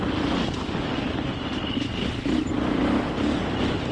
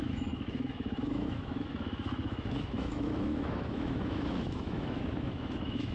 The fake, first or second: second